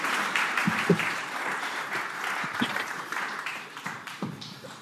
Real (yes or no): no